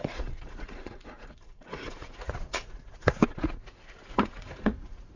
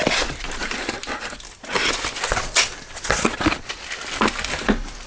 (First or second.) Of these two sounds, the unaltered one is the second